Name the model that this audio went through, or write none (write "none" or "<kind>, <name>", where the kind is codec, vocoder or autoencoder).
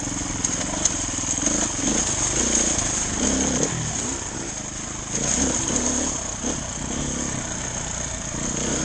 none